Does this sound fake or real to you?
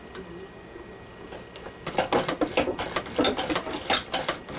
real